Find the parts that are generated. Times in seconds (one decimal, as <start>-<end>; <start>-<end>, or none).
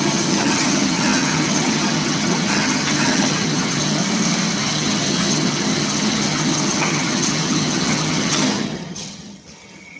0.0-4.0; 4.6-10.0